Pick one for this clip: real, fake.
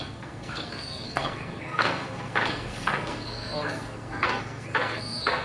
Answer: fake